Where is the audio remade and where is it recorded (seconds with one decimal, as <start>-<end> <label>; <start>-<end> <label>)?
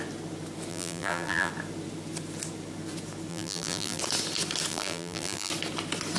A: 0.0-0.7 recorded; 0.7-1.5 remade; 1.5-3.3 recorded; 3.3-4.0 remade; 4.0-4.7 recorded; 4.7-5.5 remade; 5.5-6.2 recorded